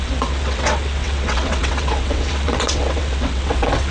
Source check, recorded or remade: remade